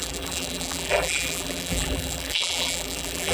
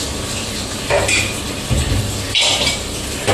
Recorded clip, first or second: second